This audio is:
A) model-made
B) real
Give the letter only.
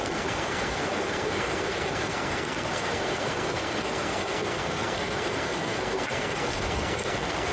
A